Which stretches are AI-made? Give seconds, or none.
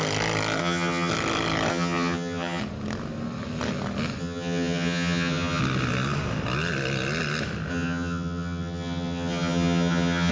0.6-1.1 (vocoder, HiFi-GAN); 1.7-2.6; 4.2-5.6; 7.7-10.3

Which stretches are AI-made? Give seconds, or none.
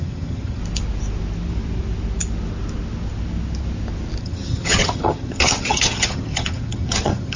0.0-0.6 (vocoder, HiFi-GAN); 4.2-7.4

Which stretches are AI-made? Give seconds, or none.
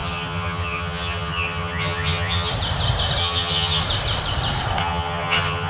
0.0-2.5 (vocoder, HiFi-GAN); 3.2-3.8; 4.8-5.7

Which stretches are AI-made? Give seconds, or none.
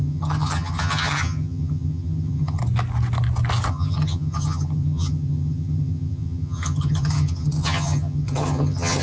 0.0-2.6 (vocoder, HiFi-GAN); 3.7-9.0